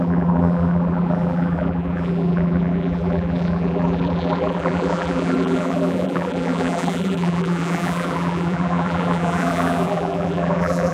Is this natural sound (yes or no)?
no